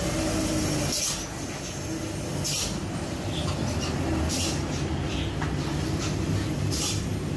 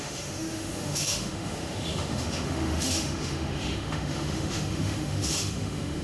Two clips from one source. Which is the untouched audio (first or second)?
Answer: first